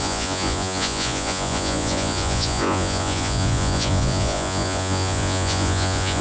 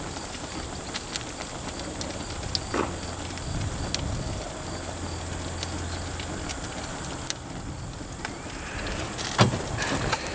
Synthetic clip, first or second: first